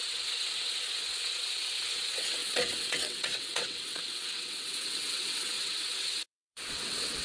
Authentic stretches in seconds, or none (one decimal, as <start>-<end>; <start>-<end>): none